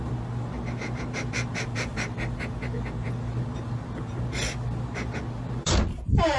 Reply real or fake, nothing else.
real